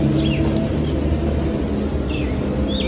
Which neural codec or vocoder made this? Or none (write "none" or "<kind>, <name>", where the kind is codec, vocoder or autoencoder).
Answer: none